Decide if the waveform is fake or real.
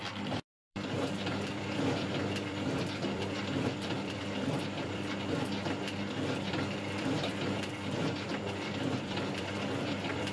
fake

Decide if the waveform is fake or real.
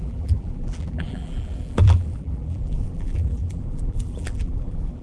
fake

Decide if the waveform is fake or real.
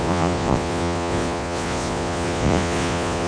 fake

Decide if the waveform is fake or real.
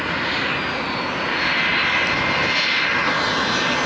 real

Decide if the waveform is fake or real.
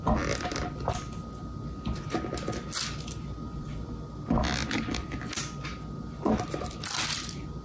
real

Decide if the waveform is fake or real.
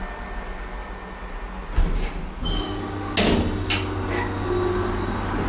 real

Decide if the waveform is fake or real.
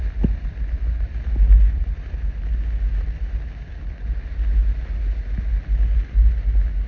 real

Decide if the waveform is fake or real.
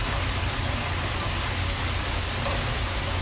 real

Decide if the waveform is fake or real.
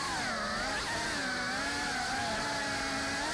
real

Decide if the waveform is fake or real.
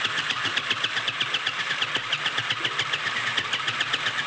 real